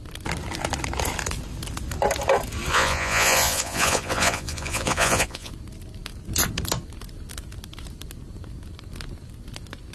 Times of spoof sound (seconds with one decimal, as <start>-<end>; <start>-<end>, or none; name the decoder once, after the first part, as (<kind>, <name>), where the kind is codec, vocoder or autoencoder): 2.7-5.5 (vocoder, Vocos)